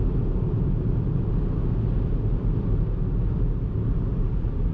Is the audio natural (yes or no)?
yes